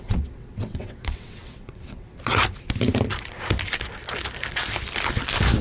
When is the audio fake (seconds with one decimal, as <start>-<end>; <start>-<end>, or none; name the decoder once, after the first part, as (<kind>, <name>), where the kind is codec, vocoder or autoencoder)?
0.0-2.1 (vocoder, WaveNeXt)